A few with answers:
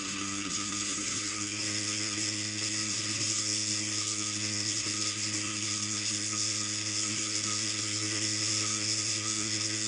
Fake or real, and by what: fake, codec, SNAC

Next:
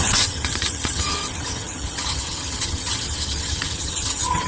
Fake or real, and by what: fake, vocoder, HiFi-GAN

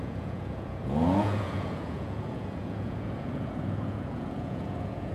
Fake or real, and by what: fake, vocoder, Vocos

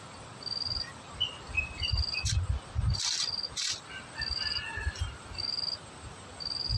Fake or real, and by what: real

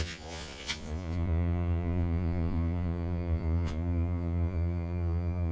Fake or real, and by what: fake, vocoder, Vocos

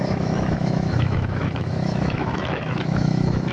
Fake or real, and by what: fake, autoencoder, DAC-VAE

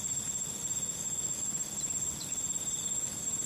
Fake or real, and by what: real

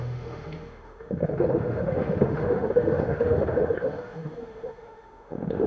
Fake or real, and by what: fake, autoencoder, DAC-VAE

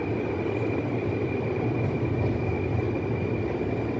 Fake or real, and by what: real